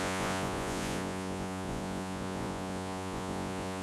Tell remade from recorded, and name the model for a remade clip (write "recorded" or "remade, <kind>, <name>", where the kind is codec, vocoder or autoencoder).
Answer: remade, vocoder, Vocos